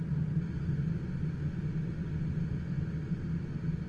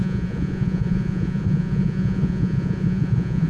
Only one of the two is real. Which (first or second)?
first